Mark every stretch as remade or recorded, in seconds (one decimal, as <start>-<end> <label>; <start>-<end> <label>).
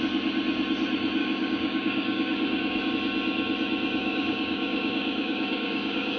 0.0-1.2 recorded; 1.2-2.9 remade; 2.9-4.0 recorded; 4.0-6.2 remade